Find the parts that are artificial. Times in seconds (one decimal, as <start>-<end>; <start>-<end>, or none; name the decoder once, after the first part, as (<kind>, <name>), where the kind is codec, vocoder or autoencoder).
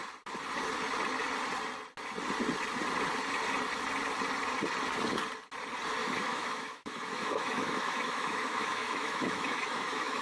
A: 6.0-10.2 (autoencoder, DAC-VAE)